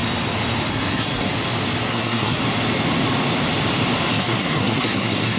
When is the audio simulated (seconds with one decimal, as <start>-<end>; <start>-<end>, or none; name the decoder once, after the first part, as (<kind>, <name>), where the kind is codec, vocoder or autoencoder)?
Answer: 0.7-1.3 (codec, SNAC); 1.9-2.4; 4.1-5.4